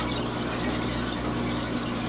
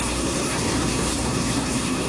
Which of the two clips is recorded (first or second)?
first